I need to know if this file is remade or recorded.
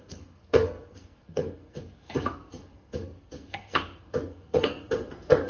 remade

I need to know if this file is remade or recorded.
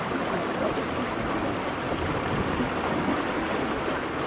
recorded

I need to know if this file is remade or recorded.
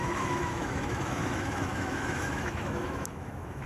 remade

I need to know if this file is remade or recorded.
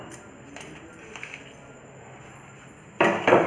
recorded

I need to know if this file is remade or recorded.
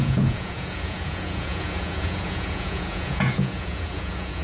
remade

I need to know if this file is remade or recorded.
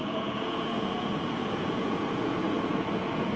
remade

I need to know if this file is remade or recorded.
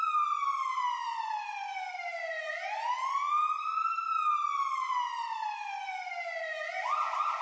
recorded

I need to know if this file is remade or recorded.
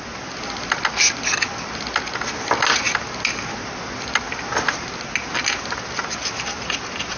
recorded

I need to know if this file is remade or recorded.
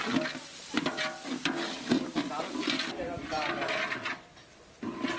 recorded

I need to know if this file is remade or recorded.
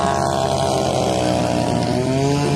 recorded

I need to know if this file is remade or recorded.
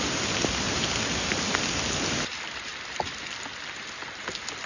recorded